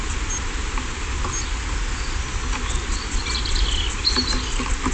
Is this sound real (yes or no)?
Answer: yes